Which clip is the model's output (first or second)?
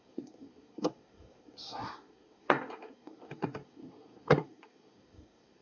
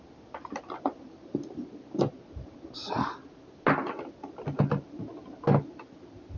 first